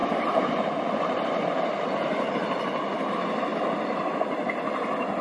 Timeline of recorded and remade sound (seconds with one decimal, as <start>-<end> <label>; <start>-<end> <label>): 0.0-3.1 remade; 3.1-5.2 recorded